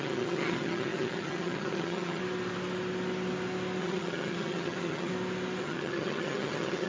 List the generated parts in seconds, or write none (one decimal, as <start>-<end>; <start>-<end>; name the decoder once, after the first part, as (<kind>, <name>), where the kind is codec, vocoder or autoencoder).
0.0-2.2 (vocoder, HiFi-GAN); 3.8-5.1; 5.6-6.9